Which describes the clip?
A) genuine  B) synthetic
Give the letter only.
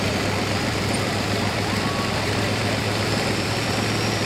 B